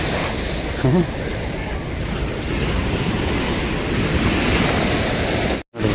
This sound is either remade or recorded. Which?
recorded